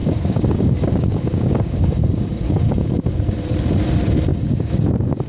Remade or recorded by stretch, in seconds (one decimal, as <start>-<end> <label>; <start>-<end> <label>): 0.0-3.2 remade; 3.2-4.3 recorded; 4.3-5.3 remade